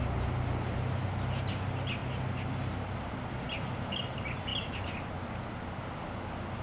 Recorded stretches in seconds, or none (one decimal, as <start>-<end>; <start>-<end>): 0.0-6.6